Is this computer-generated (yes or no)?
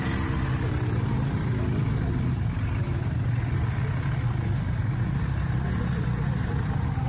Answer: no